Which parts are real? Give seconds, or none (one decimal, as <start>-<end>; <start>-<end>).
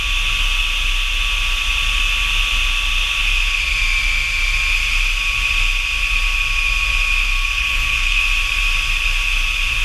0.0-7.2; 8.2-9.8